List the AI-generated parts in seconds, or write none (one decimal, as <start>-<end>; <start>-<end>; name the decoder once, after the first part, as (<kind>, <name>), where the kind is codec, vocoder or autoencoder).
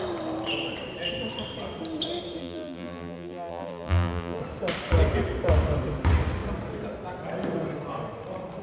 2.4-4.4 (vocoder, BigVGAN v2)